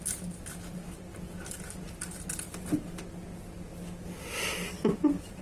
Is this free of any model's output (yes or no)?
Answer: yes